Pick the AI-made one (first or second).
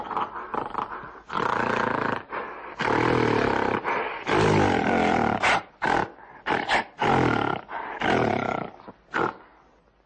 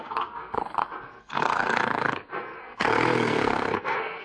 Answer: second